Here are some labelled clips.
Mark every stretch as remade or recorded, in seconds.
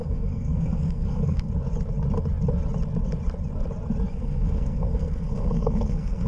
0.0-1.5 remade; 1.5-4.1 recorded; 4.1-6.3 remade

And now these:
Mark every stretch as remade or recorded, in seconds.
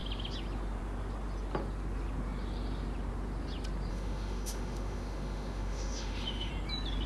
0.0-3.9 recorded; 3.9-6.5 remade; 6.5-7.1 recorded